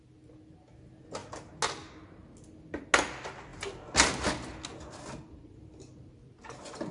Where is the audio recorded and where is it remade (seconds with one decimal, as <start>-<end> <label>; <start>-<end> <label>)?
0.0-6.9 recorded